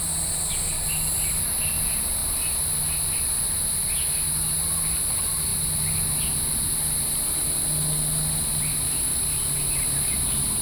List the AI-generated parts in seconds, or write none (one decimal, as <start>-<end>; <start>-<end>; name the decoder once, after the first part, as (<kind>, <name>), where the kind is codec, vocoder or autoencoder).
none